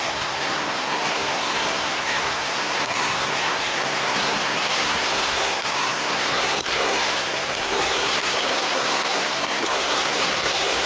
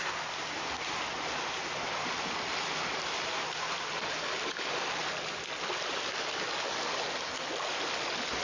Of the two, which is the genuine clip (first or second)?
second